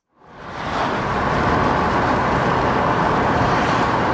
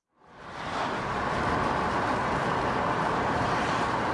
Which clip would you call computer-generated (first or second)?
second